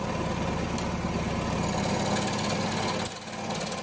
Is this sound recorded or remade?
recorded